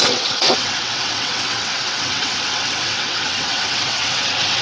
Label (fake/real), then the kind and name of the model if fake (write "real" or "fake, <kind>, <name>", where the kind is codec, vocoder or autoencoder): fake, vocoder, WaveNeXt